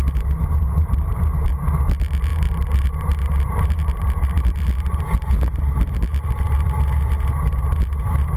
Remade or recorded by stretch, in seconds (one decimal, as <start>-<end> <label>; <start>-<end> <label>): 0.0-0.8 recorded; 0.8-1.5 remade; 1.5-2.3 recorded; 2.3-6.8 remade; 6.8-8.4 recorded